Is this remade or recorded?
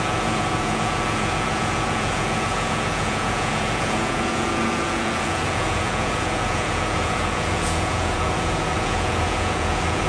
remade